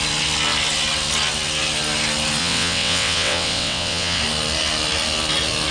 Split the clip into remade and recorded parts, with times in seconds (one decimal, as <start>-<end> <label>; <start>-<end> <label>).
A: 0.0-2.4 recorded; 2.4-4.2 remade; 4.2-5.7 recorded